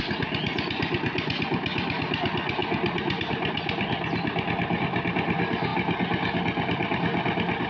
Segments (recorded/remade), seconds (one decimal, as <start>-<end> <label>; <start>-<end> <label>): 0.0-7.7 recorded